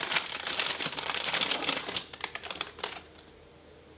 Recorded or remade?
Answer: recorded